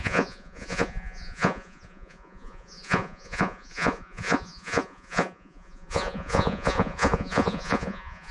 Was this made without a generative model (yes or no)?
no